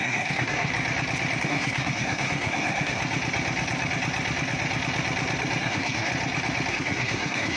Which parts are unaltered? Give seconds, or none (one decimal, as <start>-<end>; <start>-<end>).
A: 0.7-1.4; 3.0-5.6; 6.1-6.7